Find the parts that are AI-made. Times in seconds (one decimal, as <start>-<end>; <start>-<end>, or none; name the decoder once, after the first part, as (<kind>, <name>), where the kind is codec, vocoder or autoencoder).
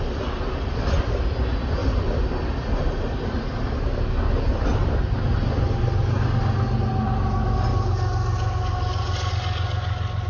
none